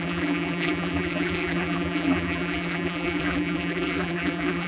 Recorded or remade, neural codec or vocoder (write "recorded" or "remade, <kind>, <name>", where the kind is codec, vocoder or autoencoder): remade, vocoder, BigVGAN v2